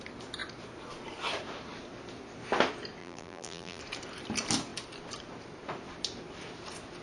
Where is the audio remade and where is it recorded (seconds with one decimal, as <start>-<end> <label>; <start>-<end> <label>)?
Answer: 0.0-3.0 recorded; 3.0-3.8 remade; 3.8-7.0 recorded